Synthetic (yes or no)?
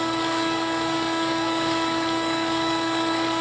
yes